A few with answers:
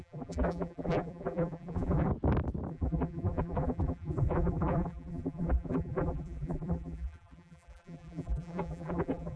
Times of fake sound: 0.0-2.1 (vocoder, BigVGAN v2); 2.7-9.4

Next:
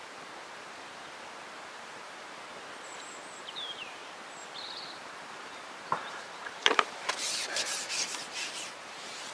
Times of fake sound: 0.0-2.5 (vocoder, BigVGAN v2); 3.4-4.0; 4.8-9.3

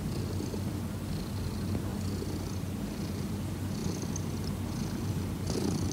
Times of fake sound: none

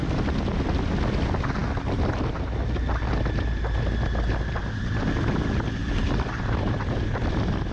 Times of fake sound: 5.8-7.2 (vocoder, BigVGAN v2)

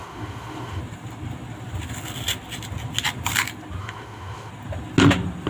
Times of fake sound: 0.0-0.8 (autoencoder, DAC-VAE); 3.8-4.5

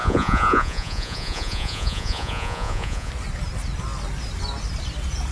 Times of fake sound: 0.0-3.1 (vocoder, Vocos)

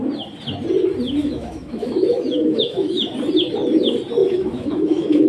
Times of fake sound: 1.2-3.0 (autoencoder, DAC-VAE); 4.2-5.3

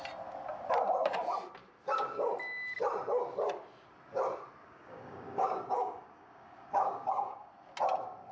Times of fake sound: 4.6-7.5 (codec, DAC)